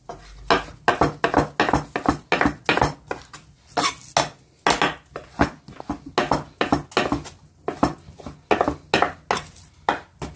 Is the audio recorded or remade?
recorded